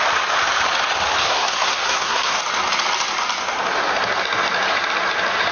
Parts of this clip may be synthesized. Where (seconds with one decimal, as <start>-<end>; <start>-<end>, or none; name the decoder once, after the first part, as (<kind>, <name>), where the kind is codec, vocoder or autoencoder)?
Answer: 1.2-2.4 (codec, SNAC)